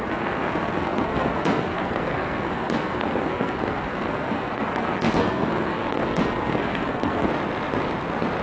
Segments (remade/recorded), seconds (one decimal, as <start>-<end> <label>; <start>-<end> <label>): 0.0-7.3 remade; 7.3-8.4 recorded